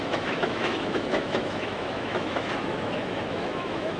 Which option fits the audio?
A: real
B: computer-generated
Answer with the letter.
B